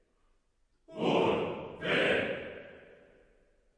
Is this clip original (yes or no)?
yes